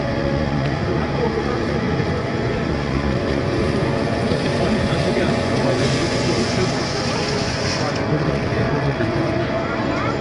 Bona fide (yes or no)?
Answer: no